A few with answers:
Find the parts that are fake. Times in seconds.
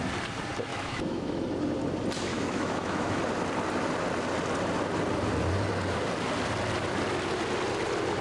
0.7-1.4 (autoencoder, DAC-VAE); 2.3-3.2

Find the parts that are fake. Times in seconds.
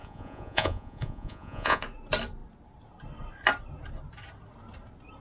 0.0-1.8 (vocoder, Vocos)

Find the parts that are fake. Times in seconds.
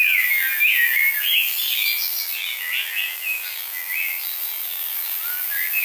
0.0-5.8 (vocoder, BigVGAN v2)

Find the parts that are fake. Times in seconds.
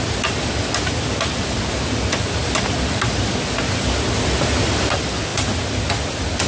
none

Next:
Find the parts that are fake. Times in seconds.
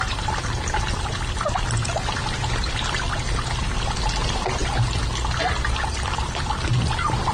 none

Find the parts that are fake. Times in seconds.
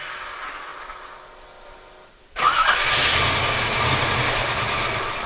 none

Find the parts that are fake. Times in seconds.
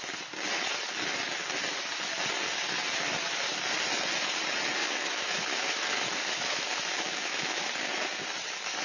4.8-7.7 (autoencoder, DAC-VAE)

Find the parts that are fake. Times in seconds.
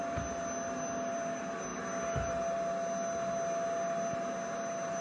none